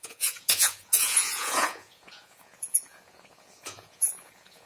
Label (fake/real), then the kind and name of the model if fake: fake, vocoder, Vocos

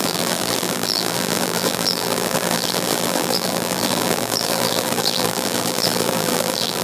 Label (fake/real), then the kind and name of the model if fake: fake, vocoder, BigVGAN v2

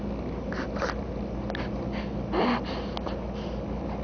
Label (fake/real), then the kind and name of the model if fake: real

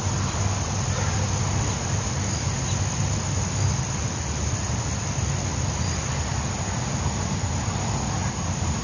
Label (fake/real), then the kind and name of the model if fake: real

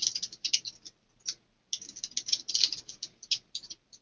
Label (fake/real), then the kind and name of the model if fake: real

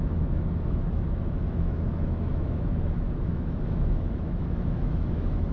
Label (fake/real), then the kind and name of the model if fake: fake, autoencoder, DAC-VAE